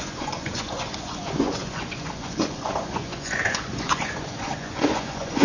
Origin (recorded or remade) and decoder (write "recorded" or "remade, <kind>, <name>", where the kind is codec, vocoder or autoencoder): remade, vocoder, Vocos